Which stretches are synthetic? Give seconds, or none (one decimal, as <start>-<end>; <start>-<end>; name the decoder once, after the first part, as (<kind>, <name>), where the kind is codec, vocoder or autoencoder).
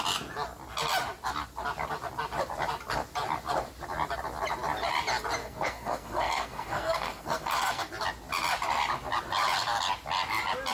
5.4-7.9 (codec, SNAC)